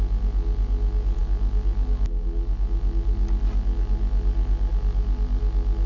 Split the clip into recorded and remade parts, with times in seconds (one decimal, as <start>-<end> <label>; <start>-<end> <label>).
0.0-5.9 recorded

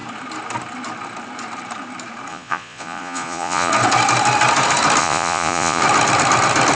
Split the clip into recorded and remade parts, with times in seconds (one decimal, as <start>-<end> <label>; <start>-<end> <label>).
0.0-2.3 recorded; 2.3-3.7 remade; 3.7-5.0 recorded; 5.0-5.8 remade; 5.8-6.7 recorded

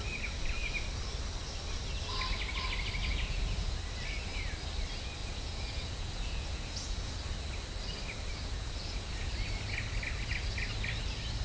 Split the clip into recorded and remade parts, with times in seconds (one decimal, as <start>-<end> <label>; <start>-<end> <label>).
0.0-3.0 recorded; 3.0-3.8 remade; 3.8-5.2 recorded; 5.2-7.1 remade; 7.1-8.3 recorded; 8.3-9.3 remade; 9.3-11.4 recorded

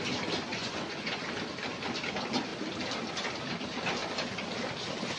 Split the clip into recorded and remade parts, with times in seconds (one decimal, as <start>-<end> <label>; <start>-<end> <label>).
0.0-0.5 recorded; 0.5-1.2 remade; 1.2-5.2 recorded

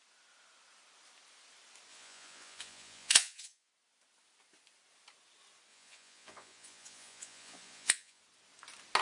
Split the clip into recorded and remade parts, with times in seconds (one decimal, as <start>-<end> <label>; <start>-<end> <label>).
0.0-1.9 recorded; 1.9-3.7 remade; 3.7-5.7 recorded; 5.7-8.2 remade; 8.2-9.0 recorded